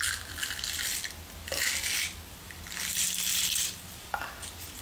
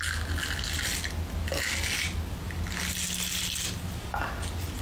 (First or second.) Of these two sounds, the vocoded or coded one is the first